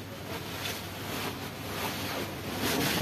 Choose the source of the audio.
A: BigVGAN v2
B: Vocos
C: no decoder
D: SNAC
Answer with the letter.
C